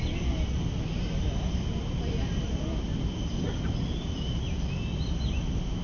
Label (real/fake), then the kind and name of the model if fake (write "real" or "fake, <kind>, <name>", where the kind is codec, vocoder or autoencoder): real